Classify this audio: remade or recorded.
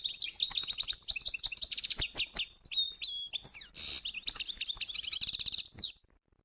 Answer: recorded